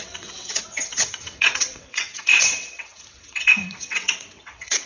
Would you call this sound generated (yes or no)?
yes